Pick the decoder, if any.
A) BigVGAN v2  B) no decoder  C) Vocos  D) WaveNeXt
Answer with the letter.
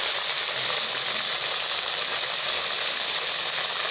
B